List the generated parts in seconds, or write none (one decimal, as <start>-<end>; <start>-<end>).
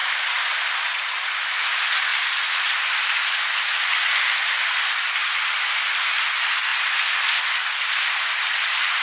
none